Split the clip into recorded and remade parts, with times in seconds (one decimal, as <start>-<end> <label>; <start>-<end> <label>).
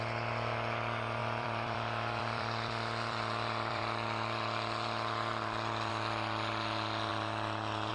0.0-1.2 recorded; 1.2-5.9 remade; 5.9-7.9 recorded